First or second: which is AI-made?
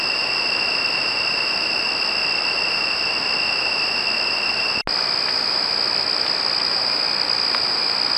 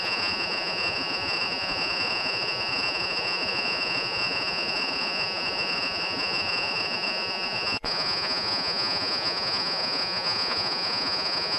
second